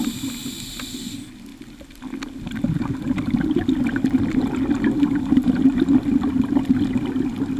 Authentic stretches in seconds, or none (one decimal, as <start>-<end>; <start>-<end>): 0.0-7.6